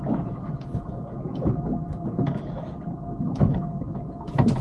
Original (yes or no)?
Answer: no